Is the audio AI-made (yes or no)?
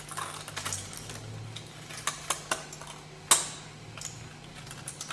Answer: no